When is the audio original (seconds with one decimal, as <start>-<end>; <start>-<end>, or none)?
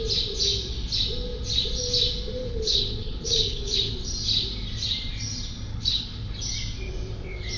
0.0-2.4; 3.9-5.7; 6.3-7.6